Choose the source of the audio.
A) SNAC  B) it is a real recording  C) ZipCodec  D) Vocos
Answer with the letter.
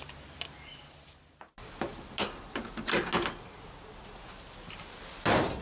B